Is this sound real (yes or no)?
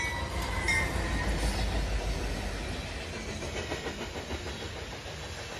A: yes